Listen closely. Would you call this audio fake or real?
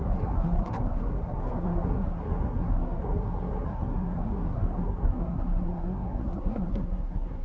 fake